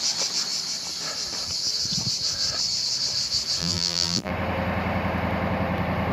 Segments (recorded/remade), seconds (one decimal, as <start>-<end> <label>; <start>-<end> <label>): 0.0-3.6 recorded; 3.6-4.3 remade; 4.3-6.1 recorded